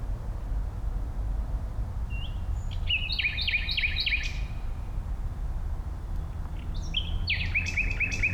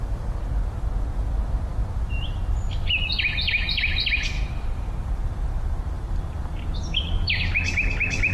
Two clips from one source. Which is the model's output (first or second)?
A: second